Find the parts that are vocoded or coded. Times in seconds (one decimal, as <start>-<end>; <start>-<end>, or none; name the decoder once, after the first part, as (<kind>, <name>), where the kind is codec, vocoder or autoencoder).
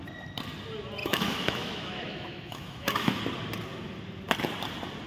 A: 1.0-3.2 (autoencoder, DAC-VAE)